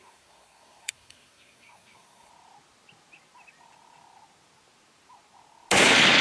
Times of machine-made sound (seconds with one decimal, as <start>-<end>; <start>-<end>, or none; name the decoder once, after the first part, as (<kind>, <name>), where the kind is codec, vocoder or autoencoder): 0.0-2.3 (codec, SNAC)